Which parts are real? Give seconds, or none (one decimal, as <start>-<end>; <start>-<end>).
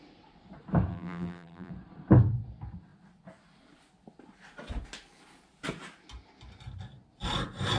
0.0-0.9; 1.7-7.8